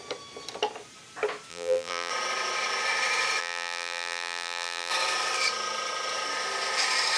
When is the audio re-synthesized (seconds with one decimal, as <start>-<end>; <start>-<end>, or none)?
1.5-2.1; 3.4-4.9